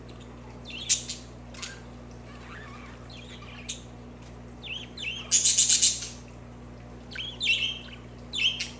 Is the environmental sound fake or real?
real